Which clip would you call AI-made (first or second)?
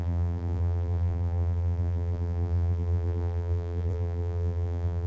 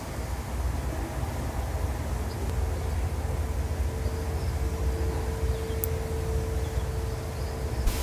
first